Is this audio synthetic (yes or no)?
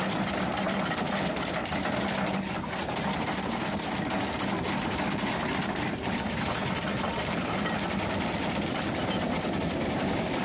no